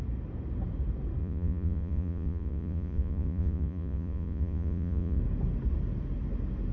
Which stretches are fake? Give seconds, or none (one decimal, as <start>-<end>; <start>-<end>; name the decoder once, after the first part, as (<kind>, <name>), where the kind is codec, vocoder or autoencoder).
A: 1.2-5.2 (vocoder, Vocos)